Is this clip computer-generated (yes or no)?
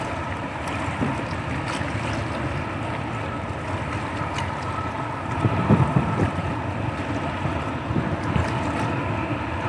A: no